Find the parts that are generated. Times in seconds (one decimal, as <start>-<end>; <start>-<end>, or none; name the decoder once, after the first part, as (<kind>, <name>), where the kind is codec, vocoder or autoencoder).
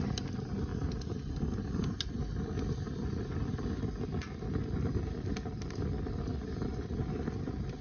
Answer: none